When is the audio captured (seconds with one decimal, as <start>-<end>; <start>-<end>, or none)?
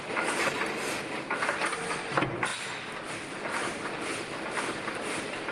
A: 2.5-3.1; 3.6-5.0